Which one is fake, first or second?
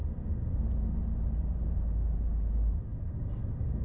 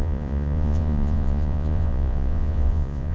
second